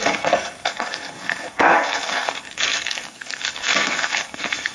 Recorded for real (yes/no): no